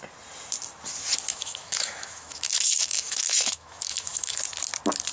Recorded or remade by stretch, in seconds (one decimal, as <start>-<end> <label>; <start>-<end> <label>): 0.0-1.3 recorded; 1.3-4.4 remade; 4.4-5.1 recorded